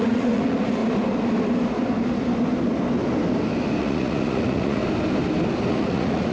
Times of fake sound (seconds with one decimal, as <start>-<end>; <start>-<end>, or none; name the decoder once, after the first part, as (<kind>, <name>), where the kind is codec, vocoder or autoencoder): 0.0-0.8 (vocoder, Vocos); 3.8-4.8; 5.7-6.3